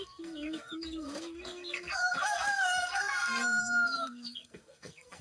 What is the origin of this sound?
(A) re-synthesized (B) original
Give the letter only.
A